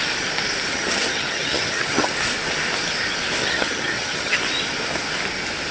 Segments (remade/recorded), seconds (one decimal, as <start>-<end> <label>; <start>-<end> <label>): 0.0-0.7 recorded; 0.7-2.1 remade; 2.1-3.4 recorded; 3.4-4.4 remade; 4.4-5.7 recorded